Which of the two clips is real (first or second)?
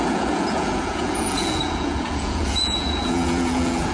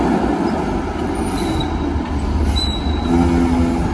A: second